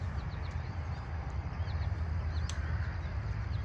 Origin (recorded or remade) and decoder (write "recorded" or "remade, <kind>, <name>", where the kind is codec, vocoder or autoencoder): recorded